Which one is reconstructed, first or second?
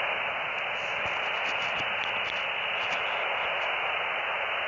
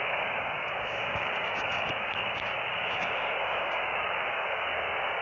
second